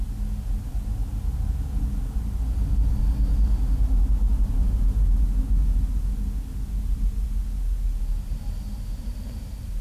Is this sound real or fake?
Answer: real